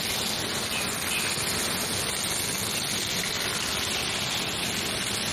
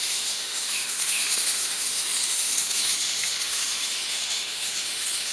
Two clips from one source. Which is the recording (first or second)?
first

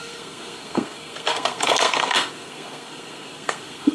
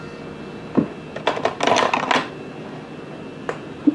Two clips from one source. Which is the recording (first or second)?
second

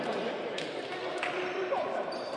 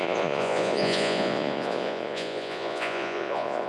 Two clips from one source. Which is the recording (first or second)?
first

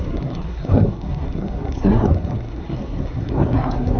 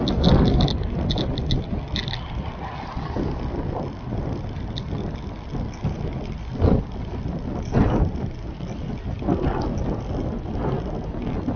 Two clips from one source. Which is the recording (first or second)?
second